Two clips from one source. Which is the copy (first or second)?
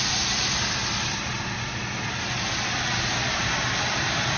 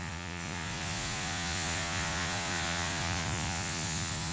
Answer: second